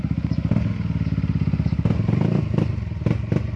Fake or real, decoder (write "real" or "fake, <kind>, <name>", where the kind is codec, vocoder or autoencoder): real